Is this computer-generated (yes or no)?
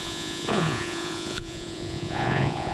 yes